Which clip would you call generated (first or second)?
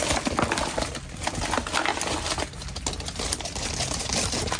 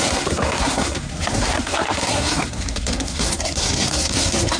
second